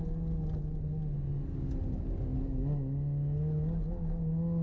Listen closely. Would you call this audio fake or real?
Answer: real